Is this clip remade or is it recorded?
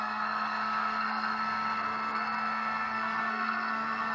remade